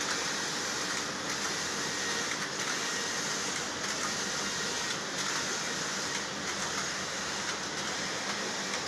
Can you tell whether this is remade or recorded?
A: recorded